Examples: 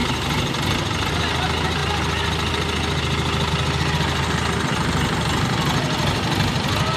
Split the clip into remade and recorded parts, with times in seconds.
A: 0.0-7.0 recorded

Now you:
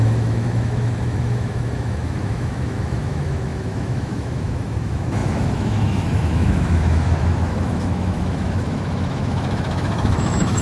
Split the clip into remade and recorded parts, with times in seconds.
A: 0.0-10.6 remade

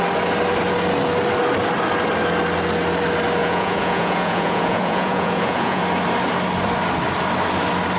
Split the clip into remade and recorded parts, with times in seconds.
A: 0.0-3.4 recorded; 3.4-5.8 remade; 5.8-8.0 recorded

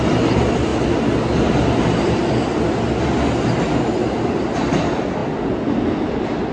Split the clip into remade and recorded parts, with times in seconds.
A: 0.0-6.5 recorded

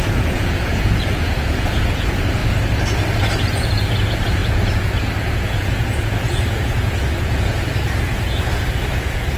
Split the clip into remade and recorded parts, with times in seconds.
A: 0.0-2.4 remade; 2.4-3.6 recorded; 3.6-9.4 remade

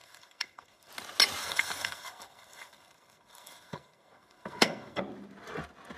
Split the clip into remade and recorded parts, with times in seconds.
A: 0.0-0.9 remade; 0.9-1.4 recorded; 1.4-5.0 remade; 5.0-6.0 recorded

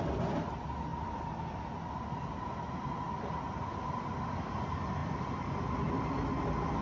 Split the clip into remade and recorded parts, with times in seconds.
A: 0.0-6.8 recorded